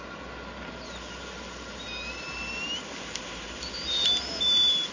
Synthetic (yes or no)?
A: no